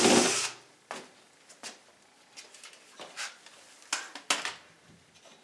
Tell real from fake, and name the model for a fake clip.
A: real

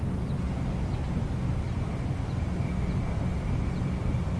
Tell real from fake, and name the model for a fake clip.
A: real